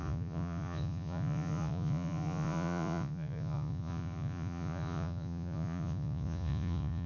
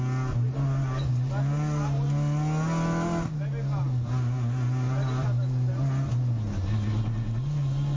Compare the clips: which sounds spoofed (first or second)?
first